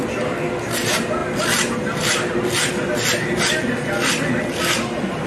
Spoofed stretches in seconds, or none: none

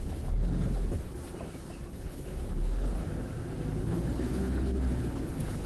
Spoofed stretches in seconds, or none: 0.0-1.2 (codec, HILCodec); 1.9-3.0; 3.8-5.7

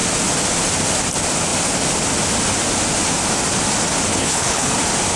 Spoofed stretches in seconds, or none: 4.1-4.7 (codec, HILCodec)

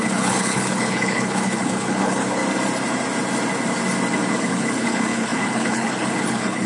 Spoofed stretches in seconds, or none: 0.0-2.4 (codec, HILCodec); 4.3-6.7

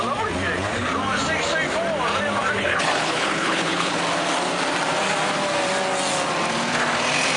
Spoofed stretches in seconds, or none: 2.6-4.0 (codec, HILCodec)